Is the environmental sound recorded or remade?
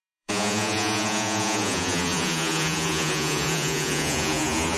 remade